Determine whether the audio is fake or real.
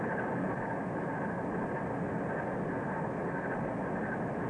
real